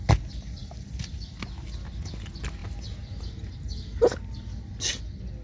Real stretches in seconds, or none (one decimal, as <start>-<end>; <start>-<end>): 0.0-5.4